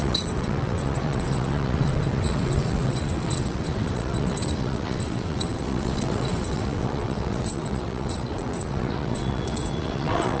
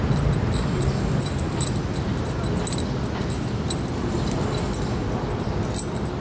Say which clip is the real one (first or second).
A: second